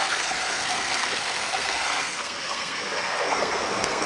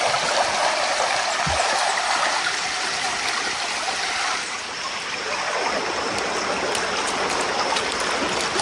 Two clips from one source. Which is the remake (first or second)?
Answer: first